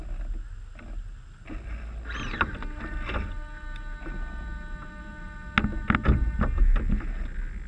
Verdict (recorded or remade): recorded